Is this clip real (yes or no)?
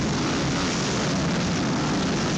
yes